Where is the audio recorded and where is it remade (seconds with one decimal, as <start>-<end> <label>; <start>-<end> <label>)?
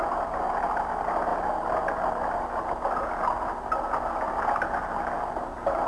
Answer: 0.0-5.9 recorded